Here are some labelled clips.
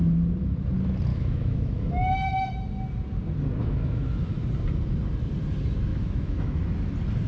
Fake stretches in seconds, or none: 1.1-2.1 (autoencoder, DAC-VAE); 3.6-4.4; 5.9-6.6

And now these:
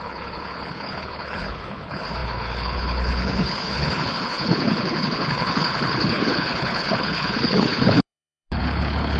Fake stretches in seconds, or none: 0.0-9.2 (codec, HILCodec)

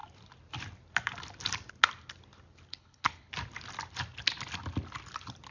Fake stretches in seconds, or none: 2.7-3.3 (codec, HILCodec)

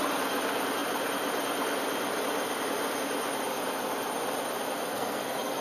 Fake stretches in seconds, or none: 4.9-5.6 (codec, SNAC)